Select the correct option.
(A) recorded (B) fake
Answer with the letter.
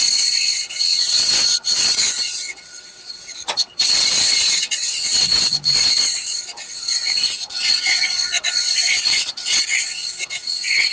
B